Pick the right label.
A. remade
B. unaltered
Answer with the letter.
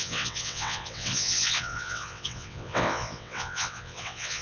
A